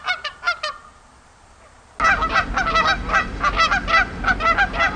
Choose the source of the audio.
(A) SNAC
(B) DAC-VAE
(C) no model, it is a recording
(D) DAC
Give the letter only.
C